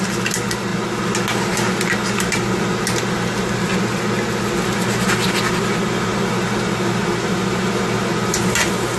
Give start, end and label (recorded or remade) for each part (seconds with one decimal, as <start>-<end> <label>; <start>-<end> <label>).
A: 0.0-9.0 recorded